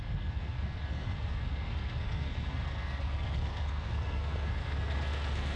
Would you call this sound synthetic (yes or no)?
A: yes